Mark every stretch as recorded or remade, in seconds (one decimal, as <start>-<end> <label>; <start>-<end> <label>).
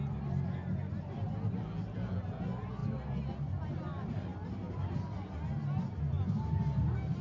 0.0-7.2 recorded